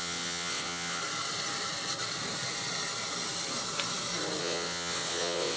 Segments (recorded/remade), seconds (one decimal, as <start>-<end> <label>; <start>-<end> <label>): 0.0-1.0 remade; 1.0-4.4 recorded; 4.4-5.6 remade